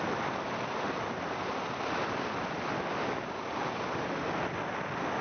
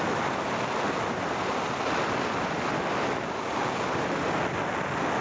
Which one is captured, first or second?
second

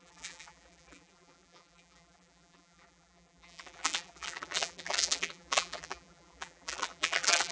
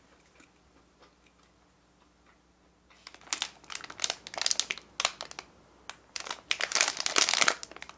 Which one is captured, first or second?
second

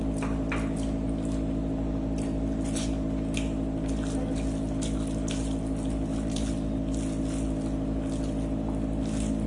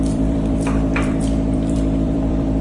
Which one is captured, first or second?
first